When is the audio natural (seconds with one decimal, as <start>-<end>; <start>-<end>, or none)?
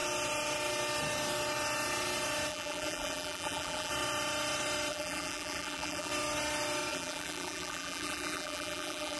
0.0-2.5; 3.9-4.9; 6.1-6.9